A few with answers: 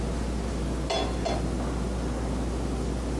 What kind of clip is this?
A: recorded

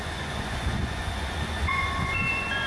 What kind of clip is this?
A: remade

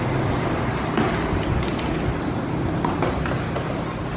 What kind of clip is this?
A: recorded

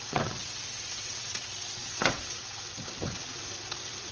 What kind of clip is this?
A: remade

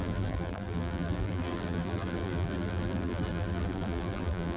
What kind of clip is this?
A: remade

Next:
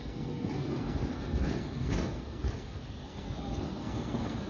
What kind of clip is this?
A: remade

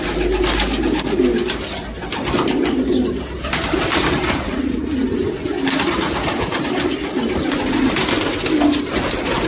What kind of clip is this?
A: recorded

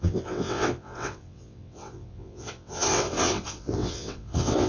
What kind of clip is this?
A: remade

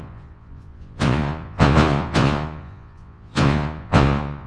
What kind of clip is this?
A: remade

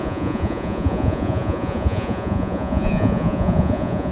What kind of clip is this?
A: remade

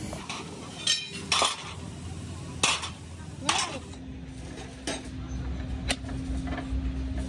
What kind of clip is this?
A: recorded